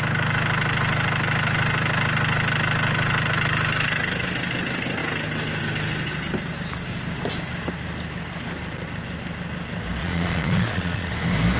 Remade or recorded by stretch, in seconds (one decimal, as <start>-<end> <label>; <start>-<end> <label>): 0.0-10.0 recorded; 10.0-11.1 remade; 11.1-11.6 recorded

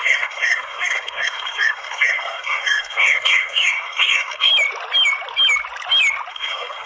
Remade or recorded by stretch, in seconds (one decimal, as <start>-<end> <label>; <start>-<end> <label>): 0.0-4.5 remade; 4.5-6.3 recorded; 6.3-6.9 remade

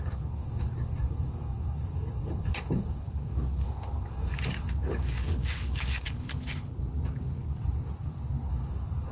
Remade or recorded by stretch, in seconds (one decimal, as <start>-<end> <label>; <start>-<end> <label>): 0.0-6.3 remade; 6.3-8.5 recorded; 8.5-9.1 remade

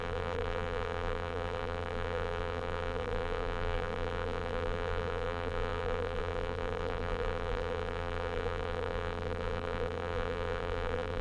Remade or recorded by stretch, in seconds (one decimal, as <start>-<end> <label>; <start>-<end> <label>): 0.0-11.2 remade

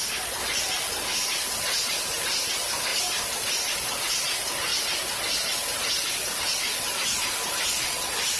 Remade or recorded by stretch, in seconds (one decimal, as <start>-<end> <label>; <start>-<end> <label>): 0.0-8.4 recorded

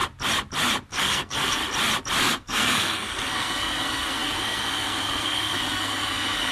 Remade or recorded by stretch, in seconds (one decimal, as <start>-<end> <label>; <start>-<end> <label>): 0.0-0.9 recorded; 0.9-1.6 remade; 1.6-2.2 recorded; 2.2-6.5 remade